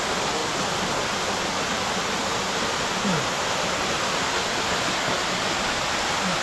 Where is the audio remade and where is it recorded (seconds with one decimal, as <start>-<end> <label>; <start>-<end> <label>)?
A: 0.0-6.4 recorded